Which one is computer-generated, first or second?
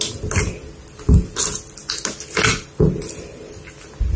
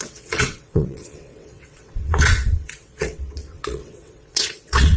second